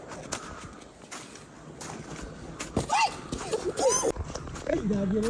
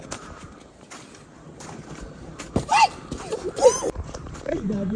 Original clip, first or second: first